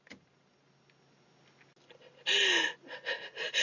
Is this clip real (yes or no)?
yes